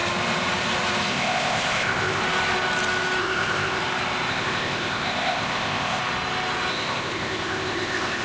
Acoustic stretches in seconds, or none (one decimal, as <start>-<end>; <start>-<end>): 0.0-1.1; 2.2-3.2; 3.8-4.3; 6.0-6.7